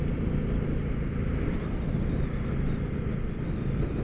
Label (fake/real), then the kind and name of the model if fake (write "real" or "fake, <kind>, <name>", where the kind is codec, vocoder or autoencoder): real